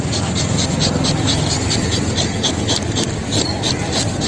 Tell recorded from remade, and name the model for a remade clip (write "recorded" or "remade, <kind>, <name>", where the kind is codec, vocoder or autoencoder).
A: recorded